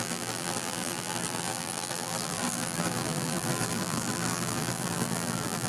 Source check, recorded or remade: remade